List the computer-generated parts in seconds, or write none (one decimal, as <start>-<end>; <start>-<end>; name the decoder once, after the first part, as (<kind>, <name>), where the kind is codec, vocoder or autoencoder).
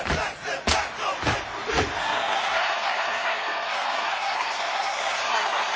2.0-5.8 (codec, SNAC)